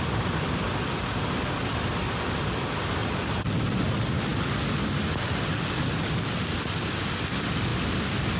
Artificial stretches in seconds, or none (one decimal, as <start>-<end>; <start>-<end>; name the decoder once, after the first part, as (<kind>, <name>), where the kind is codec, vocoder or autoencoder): 3.0-3.5 (vocoder, BigVGAN v2)